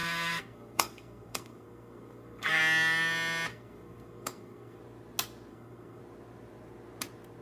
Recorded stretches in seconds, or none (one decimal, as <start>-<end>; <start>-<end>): 2.6-3.5; 4.8-5.5; 6.0-7.4